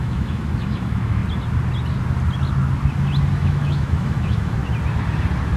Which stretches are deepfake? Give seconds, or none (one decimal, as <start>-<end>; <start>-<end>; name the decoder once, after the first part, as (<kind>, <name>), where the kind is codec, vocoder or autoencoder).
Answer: 0.0-1.2 (autoencoder, DAC-VAE); 3.3-4.6